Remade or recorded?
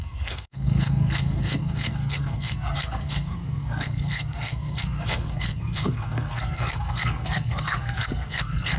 remade